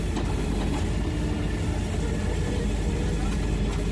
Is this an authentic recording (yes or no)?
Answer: yes